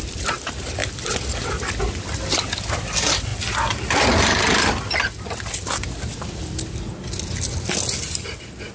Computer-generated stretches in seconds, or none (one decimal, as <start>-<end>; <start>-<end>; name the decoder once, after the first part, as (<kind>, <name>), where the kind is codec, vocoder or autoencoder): none